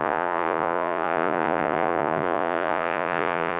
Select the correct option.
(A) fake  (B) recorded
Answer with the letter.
A